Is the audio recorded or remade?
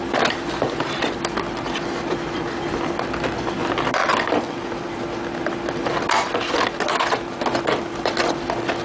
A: recorded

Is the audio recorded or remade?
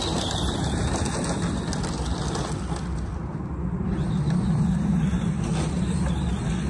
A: recorded